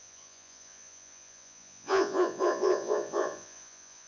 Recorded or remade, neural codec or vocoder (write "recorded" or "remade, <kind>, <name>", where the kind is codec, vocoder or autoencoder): remade, vocoder, Vocos